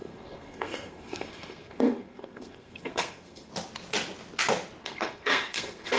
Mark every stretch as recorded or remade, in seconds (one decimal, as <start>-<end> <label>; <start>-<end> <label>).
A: 0.0-3.5 remade; 3.5-4.8 recorded; 4.8-6.0 remade

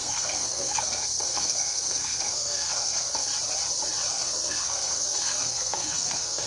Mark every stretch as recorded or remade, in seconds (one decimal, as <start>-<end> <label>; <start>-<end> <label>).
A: 0.0-3.3 remade; 3.3-4.1 recorded; 4.1-6.5 remade

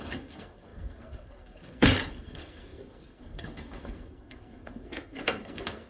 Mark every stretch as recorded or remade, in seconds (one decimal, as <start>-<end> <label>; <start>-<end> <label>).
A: 0.0-5.9 remade

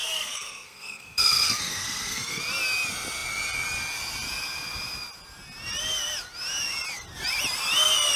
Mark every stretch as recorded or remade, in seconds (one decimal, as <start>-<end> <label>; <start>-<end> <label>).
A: 0.0-2.4 remade; 2.4-8.2 recorded

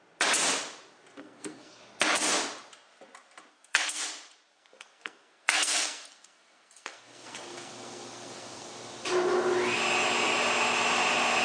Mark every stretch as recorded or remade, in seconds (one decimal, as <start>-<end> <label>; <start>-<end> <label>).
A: 0.0-1.2 recorded; 1.2-1.8 remade; 1.8-3.5 recorded; 3.5-4.0 remade; 4.0-4.5 recorded; 4.5-8.7 remade; 8.7-11.4 recorded

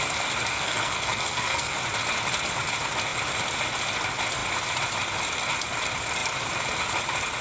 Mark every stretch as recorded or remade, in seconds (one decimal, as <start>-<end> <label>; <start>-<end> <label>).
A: 0.0-0.5 recorded; 0.5-1.8 remade; 1.8-7.4 recorded

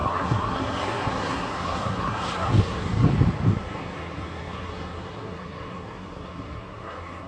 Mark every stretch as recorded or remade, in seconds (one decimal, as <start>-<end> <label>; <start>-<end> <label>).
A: 0.0-3.1 remade; 3.1-3.5 recorded; 3.5-7.3 remade

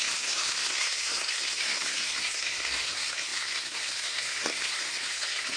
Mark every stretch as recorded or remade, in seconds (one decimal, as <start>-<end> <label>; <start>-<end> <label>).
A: 0.0-5.6 remade